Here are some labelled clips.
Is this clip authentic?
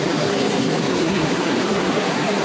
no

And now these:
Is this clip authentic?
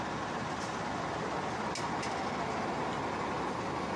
yes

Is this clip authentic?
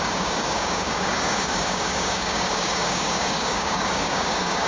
no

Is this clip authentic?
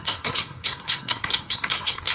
no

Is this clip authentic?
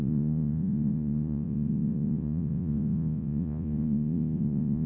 no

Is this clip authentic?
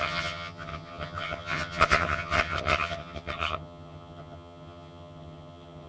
no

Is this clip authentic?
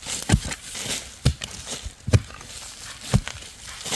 yes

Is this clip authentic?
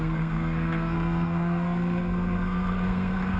no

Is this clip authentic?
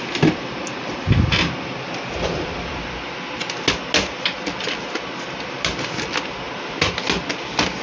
yes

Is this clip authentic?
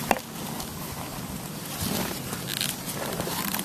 yes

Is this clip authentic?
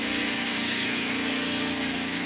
no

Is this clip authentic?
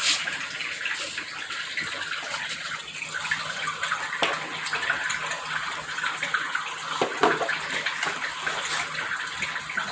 yes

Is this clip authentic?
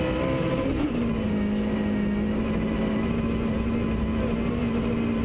yes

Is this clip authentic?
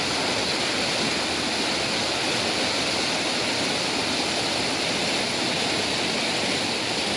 yes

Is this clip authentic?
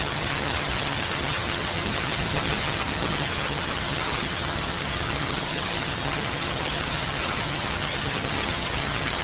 no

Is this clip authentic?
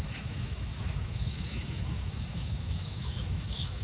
no